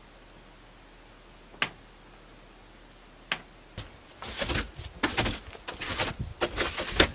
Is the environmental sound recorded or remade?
recorded